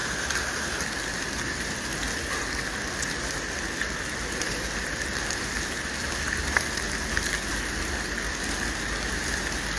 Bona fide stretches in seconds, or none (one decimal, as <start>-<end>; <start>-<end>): 0.0-9.8